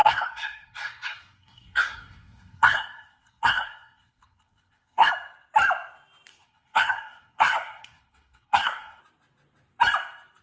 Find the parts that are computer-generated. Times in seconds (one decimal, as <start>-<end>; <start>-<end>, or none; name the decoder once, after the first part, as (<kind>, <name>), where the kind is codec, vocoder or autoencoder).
0.0-5.1 (codec, SNAC); 6.3-9.0